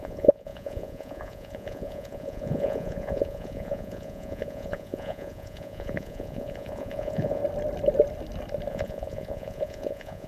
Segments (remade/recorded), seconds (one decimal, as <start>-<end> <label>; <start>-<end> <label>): 0.0-7.4 remade; 7.4-8.7 recorded; 8.7-10.3 remade